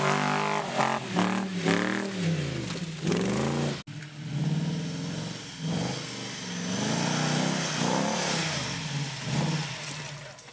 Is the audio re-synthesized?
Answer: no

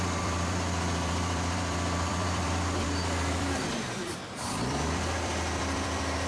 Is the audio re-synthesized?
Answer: yes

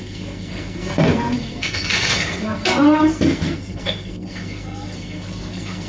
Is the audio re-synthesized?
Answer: yes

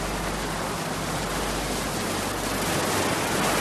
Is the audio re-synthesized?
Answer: no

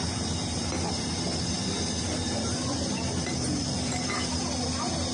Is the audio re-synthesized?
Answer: no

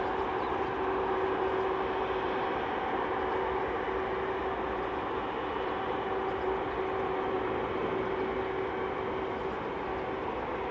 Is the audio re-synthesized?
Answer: no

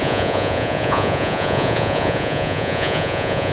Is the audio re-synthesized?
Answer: yes